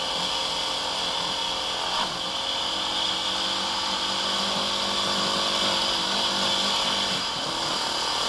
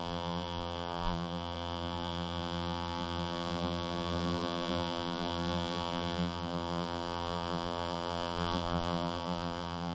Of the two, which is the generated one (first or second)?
second